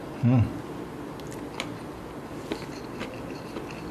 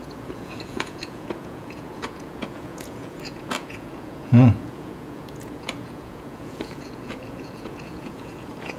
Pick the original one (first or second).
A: first